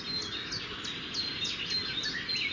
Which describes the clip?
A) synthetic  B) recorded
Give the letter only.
B